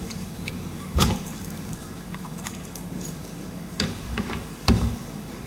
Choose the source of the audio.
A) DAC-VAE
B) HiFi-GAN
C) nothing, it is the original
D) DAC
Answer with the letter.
D